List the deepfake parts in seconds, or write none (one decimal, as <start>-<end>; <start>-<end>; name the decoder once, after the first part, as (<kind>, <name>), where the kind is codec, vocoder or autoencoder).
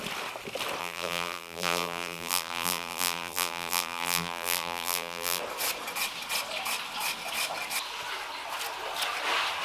0.8-5.4 (vocoder, BigVGAN v2)